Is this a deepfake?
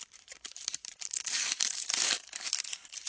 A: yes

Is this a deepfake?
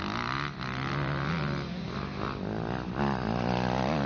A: no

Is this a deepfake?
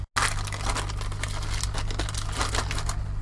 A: no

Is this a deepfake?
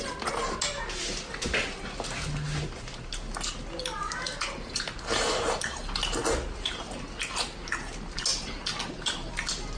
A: no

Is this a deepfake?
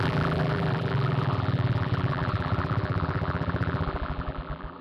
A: yes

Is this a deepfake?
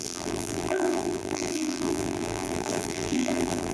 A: yes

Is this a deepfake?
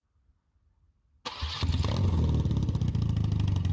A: no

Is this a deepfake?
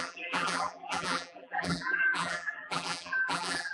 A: yes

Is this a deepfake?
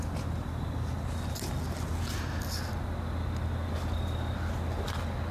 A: no